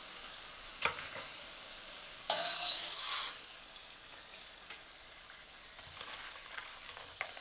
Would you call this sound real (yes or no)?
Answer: no